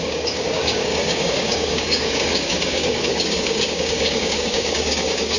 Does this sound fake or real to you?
fake